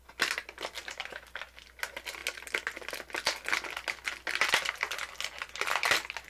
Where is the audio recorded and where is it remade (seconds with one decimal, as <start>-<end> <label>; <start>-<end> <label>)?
0.0-6.3 recorded